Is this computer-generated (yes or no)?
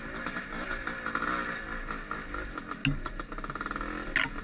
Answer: no